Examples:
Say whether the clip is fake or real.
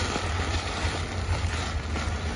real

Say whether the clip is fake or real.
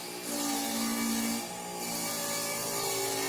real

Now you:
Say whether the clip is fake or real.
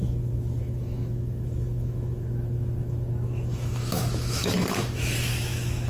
fake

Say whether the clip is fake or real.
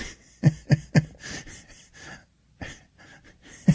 real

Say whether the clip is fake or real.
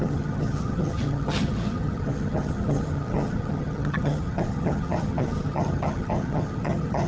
fake